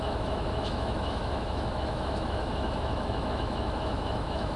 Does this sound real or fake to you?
fake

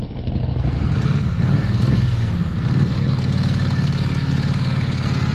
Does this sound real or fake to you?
fake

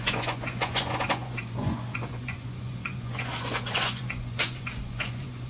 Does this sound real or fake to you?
fake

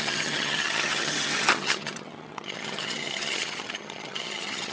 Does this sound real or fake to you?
fake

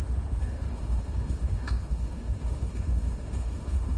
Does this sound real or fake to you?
fake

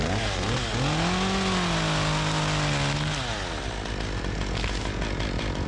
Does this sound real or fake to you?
real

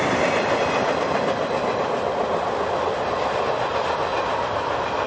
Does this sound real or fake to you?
real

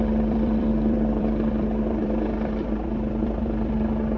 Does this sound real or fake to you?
fake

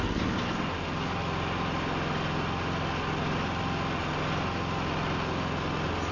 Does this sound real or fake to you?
real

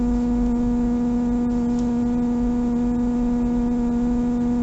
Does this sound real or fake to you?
real